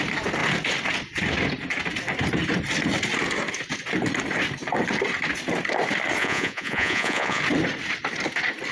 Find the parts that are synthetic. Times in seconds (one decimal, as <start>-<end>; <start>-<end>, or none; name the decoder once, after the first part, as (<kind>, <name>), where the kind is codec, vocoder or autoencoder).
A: 6.2-7.4 (vocoder, Vocos)